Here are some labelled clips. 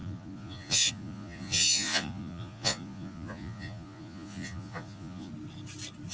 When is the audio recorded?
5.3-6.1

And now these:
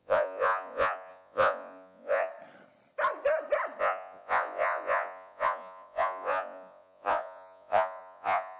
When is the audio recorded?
2.3-3.8